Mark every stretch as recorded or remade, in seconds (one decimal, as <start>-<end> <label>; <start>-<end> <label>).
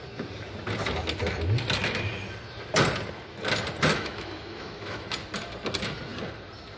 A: 0.0-3.9 recorded; 3.9-5.1 remade; 5.1-6.8 recorded